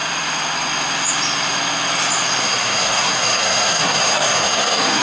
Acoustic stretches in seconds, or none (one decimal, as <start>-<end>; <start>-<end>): 0.0-2.4